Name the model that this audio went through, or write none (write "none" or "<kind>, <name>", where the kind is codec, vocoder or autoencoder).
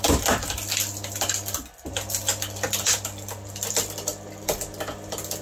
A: none